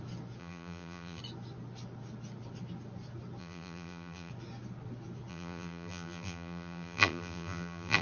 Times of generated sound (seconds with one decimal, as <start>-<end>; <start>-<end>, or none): 0.4-1.2; 3.4-4.3; 5.3-8.0